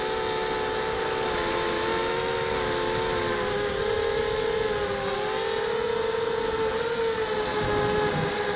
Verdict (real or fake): real